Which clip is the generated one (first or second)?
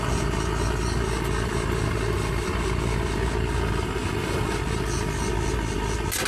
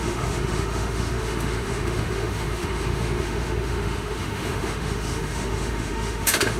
second